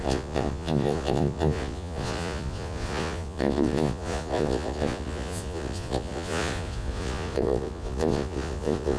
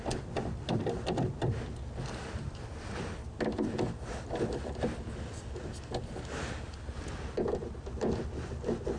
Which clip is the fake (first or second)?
first